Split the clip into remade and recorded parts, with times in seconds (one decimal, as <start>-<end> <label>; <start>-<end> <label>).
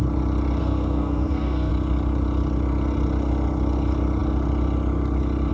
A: 0.0-0.6 recorded; 0.6-1.7 remade; 1.7-5.5 recorded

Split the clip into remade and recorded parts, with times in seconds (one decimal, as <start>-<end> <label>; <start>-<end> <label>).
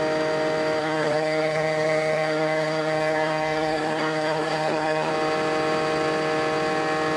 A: 0.0-0.8 recorded; 0.8-5.1 remade; 5.1-7.2 recorded